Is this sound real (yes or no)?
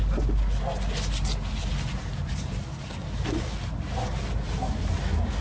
yes